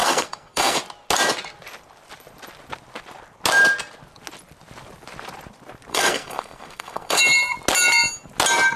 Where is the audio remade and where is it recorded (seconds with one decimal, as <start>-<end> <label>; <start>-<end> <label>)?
0.0-0.8 remade; 0.8-5.9 recorded; 5.9-7.2 remade; 7.2-8.8 recorded